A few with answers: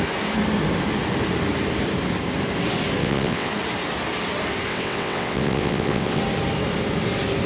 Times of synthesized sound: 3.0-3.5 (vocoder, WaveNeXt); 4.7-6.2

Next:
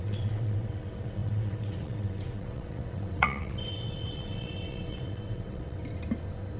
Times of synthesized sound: 0.0-5.8 (vocoder, WaveNeXt)

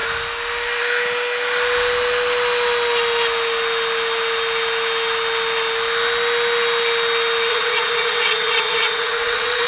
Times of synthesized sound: 7.5-9.7 (vocoder, WaveNeXt)

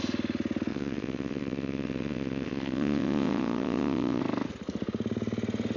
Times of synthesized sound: 0.7-4.2 (vocoder, WaveNeXt)

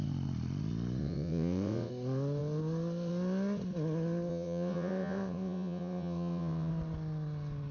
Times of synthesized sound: 1.0-1.9 (vocoder, WaveNeXt); 4.3-6.7